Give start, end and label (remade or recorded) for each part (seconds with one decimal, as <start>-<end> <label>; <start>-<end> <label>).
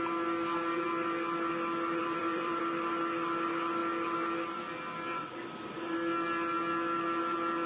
0.0-2.0 recorded; 2.0-2.6 remade; 2.6-7.7 recorded